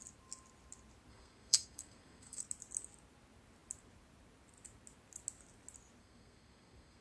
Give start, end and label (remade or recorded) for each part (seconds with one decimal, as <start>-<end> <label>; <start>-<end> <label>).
0.0-1.1 recorded; 1.1-2.4 remade; 2.4-6.0 recorded; 6.0-7.0 remade